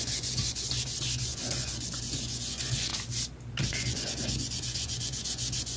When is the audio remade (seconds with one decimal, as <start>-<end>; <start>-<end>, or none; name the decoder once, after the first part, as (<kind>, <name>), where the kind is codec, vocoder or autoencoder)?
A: 0.0-2.9 (vocoder, Vocos); 3.7-5.8